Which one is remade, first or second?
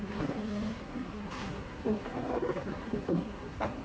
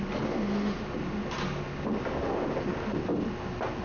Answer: first